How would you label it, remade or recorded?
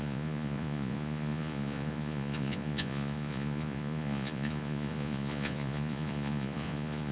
remade